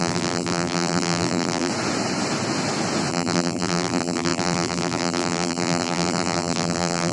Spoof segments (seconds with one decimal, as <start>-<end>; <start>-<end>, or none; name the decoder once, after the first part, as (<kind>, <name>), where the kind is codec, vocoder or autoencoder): 0.0-1.7 (vocoder, BigVGAN v2); 3.1-7.1